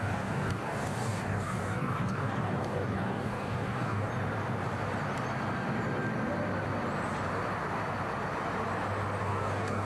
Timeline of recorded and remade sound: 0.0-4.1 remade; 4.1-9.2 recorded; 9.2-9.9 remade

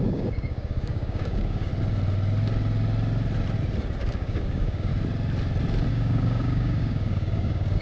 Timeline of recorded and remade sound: 0.0-1.7 remade; 1.7-4.0 recorded; 4.0-4.9 remade; 4.9-5.9 recorded; 5.9-7.8 remade

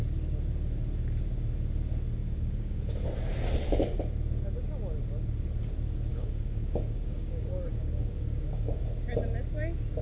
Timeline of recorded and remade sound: 0.0-2.2 recorded; 2.2-2.8 remade; 2.8-6.1 recorded; 6.1-8.8 remade; 8.8-10.0 recorded

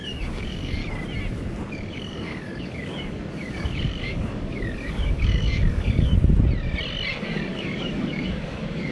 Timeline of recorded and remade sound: 0.0-0.8 remade; 0.8-1.7 recorded; 1.7-6.1 remade; 6.1-7.2 recorded; 7.2-8.9 remade

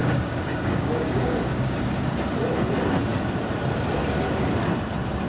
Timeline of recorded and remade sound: 0.0-1.8 remade; 1.8-5.3 recorded